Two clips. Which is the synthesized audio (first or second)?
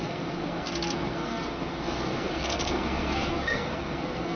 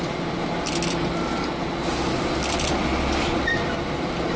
first